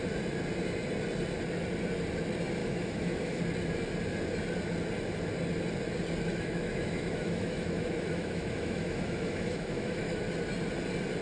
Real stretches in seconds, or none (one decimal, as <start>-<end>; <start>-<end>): 0.0-2.6; 3.4-6.3; 10.2-11.2